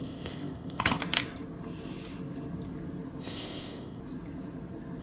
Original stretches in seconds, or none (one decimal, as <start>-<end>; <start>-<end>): 1.0-3.2; 4.0-5.0